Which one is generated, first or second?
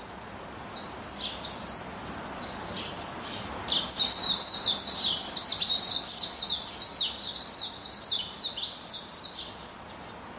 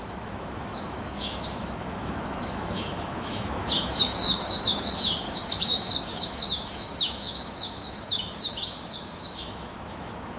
second